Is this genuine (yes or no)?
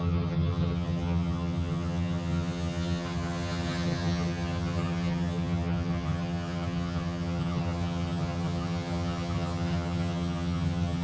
no